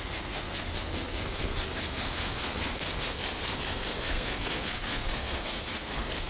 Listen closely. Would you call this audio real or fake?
fake